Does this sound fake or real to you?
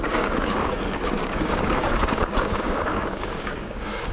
fake